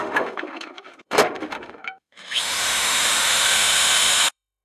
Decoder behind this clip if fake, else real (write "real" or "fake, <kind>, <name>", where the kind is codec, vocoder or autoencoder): fake, autoencoder, DAC-VAE